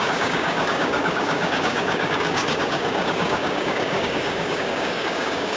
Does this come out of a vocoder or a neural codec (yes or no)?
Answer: yes